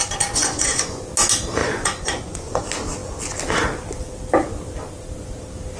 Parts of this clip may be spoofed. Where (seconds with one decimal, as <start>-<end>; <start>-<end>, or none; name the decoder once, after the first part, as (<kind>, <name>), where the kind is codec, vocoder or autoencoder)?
0.4-1.0 (vocoder, Vocos); 1.6-2.6